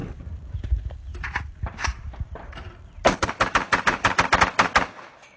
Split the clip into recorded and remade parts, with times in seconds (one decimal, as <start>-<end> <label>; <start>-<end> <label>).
0.0-0.7 remade; 0.7-1.1 recorded; 1.1-4.3 remade; 4.3-5.4 recorded